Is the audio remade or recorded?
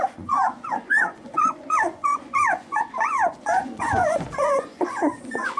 remade